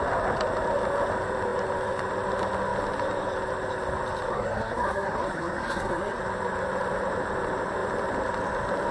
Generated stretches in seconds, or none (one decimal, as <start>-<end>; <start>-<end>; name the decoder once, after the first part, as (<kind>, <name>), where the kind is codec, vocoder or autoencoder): 4.3-6.2 (codec, SNAC)